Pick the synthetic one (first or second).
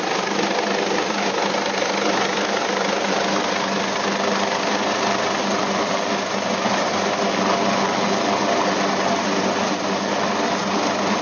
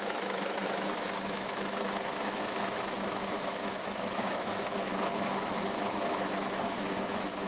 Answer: second